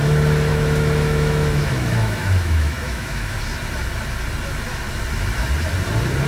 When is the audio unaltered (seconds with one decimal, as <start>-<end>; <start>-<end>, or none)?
0.0-0.5; 3.4-6.3